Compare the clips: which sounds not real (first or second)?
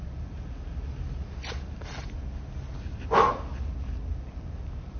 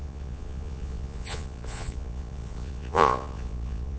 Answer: second